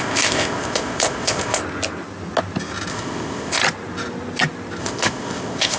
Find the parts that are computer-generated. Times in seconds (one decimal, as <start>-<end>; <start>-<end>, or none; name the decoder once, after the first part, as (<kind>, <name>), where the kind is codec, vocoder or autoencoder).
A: 0.0-1.6 (codec, ZipCodec); 2.9-3.6; 4.8-5.8